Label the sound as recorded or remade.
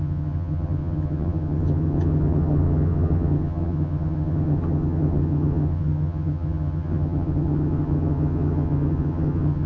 remade